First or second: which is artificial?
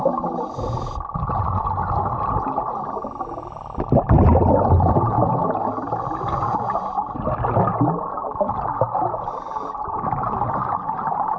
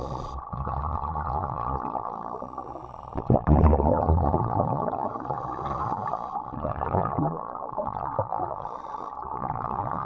second